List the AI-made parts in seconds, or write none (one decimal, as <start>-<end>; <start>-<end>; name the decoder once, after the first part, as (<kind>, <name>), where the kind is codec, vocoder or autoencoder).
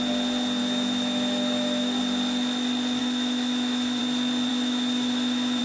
0.6-2.0 (autoencoder, DAC-VAE); 3.0-4.0; 4.5-5.6